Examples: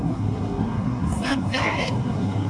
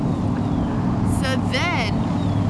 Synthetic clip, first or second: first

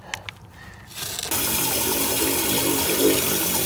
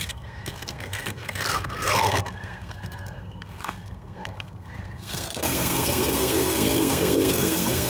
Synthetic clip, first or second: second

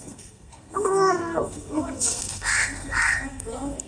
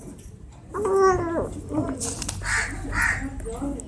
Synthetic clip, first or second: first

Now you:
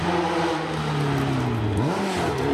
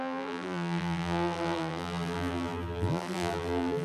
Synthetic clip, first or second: second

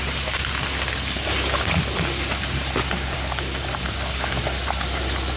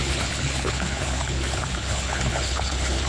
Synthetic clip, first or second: second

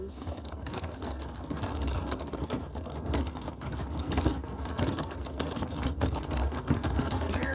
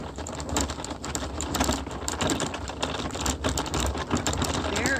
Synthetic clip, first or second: first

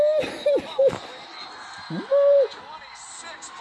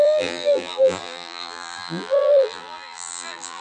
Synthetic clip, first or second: second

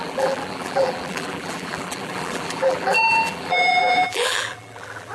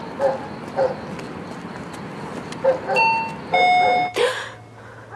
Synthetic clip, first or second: first